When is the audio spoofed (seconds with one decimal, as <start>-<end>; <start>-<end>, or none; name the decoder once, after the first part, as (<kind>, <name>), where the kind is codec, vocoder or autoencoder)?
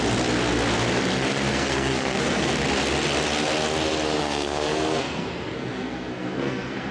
1.5-2.5 (codec, SNAC); 4.2-6.9